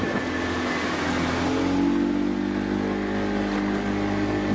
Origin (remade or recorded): recorded